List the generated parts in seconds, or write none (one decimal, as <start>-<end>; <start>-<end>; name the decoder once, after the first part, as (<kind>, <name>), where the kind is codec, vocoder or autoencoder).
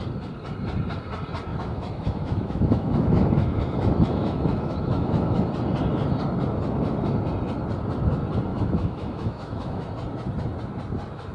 1.5-5.5 (autoencoder, DAC-VAE); 8.5-9.9